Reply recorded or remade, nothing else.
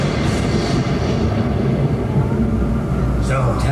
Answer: recorded